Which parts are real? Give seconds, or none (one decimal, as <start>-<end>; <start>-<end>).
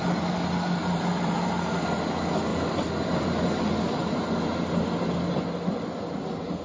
0.0-0.8; 1.8-6.6